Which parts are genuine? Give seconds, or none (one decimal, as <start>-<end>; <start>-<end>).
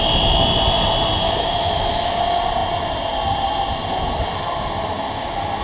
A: 0.0-1.2; 2.2-5.6